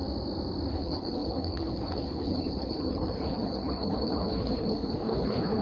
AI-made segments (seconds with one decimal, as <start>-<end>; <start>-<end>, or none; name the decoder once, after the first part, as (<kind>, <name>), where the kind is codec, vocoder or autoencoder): 0.7-5.6 (codec, HILCodec)